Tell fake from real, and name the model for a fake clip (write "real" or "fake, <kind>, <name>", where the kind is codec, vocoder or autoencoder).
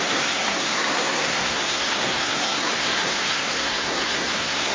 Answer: fake, codec, SNAC